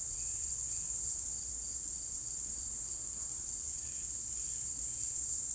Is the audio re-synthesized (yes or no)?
yes